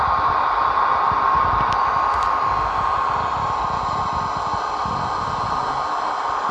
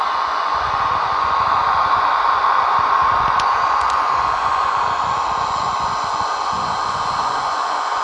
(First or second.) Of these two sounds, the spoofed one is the second